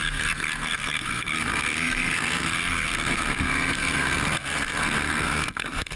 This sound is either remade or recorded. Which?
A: remade